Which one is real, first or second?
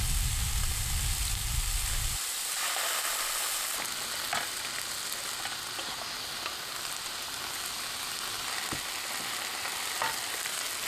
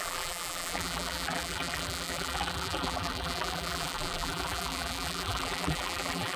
first